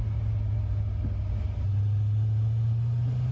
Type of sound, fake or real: real